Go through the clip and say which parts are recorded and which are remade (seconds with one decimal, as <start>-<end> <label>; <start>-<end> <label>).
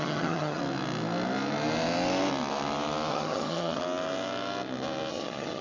0.0-0.6 remade; 0.6-3.1 recorded; 3.1-3.8 remade; 3.8-5.1 recorded; 5.1-5.6 remade